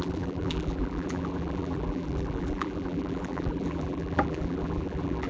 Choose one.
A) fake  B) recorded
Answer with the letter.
A